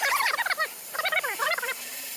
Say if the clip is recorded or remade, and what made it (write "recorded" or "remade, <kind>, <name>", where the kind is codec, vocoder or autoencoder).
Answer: remade, vocoder, BigVGAN v2